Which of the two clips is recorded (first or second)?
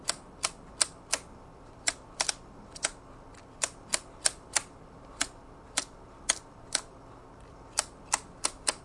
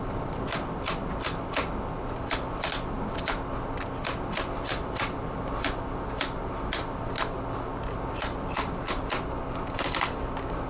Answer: second